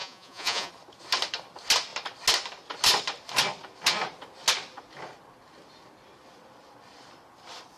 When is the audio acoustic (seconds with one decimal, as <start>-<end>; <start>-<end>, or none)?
0.7-7.8